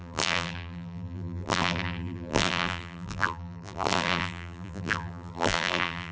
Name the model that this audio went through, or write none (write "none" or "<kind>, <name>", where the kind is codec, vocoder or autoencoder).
vocoder, BigVGAN v2